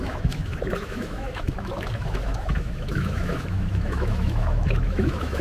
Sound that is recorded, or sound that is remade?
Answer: remade